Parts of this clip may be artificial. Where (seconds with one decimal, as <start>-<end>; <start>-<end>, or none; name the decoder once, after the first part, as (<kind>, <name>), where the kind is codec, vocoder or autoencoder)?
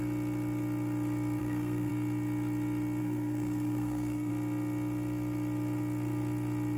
1.4-1.9 (codec, SNAC); 3.0-4.3